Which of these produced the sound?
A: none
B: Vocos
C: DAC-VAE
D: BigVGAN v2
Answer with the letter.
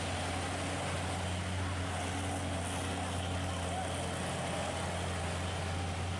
A